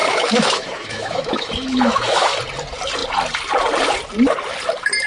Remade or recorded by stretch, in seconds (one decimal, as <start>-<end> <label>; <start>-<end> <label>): 0.0-2.4 remade; 2.4-5.1 recorded